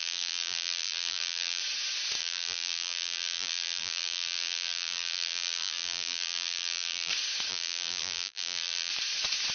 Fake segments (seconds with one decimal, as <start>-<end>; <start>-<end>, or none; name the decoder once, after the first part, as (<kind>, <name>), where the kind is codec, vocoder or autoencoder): 0.0-1.6 (vocoder, BigVGAN v2); 2.2-7.1; 7.5-8.9